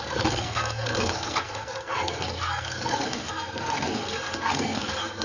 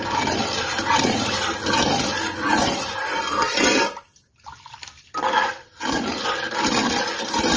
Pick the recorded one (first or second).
second